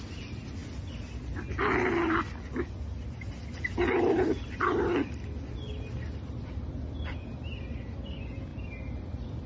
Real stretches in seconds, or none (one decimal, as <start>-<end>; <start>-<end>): 0.0-9.5